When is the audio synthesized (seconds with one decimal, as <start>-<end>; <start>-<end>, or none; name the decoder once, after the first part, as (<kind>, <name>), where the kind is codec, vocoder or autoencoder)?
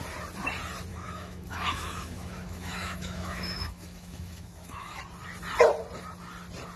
0.9-5.0 (autoencoder, DAC-VAE)